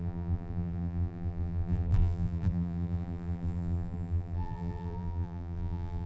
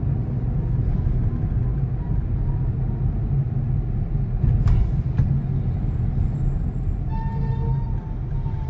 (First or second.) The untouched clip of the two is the second